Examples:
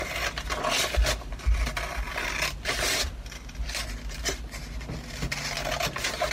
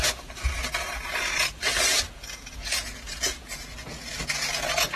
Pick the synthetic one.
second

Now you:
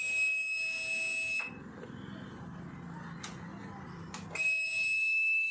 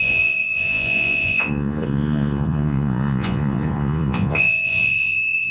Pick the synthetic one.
second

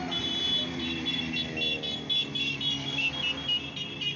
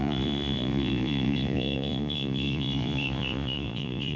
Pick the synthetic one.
second